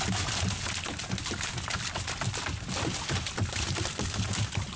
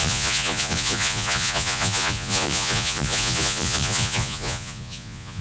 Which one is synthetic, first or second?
second